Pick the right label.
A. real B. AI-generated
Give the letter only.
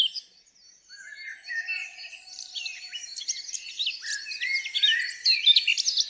A